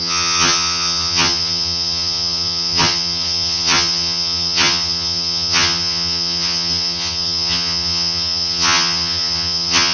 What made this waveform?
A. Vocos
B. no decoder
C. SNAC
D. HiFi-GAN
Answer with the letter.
D